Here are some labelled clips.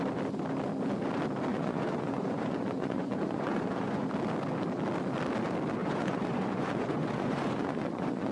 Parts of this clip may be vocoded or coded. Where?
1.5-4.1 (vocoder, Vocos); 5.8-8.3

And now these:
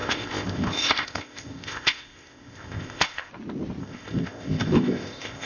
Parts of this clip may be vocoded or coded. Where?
0.0-3.3 (codec, ZipCodec); 3.8-5.5

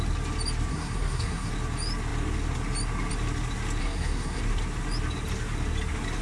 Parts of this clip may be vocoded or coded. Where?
0.7-1.5 (codec, SNAC); 3.8-4.4

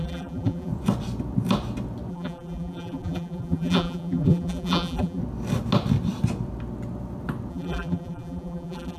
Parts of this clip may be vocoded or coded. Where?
0.0-0.7 (vocoder, BigVGAN v2); 2.1-5.2; 7.5-9.0

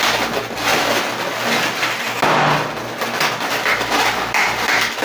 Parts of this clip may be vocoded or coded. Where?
none

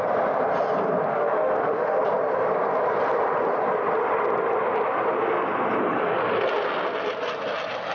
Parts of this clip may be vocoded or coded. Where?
1.1-2.0 (autoencoder, DAC-VAE)

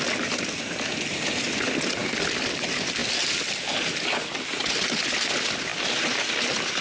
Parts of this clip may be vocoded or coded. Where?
none